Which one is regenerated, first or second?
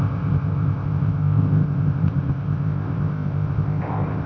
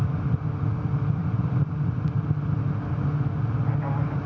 first